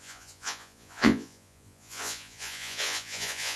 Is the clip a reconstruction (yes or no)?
yes